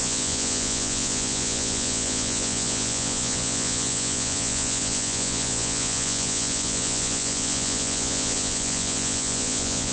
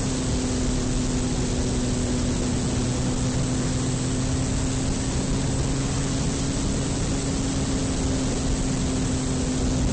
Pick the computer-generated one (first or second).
first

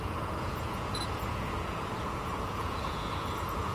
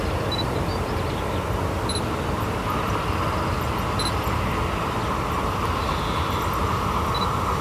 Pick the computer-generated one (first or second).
first